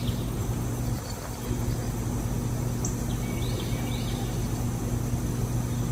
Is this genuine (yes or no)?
yes